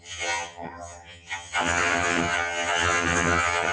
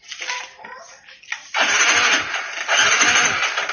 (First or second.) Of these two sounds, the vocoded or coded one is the first